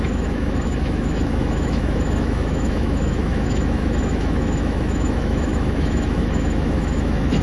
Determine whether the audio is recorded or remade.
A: remade